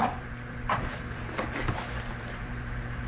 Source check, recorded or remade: remade